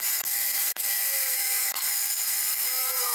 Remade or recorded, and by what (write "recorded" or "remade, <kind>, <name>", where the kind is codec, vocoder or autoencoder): remade, codec, SNAC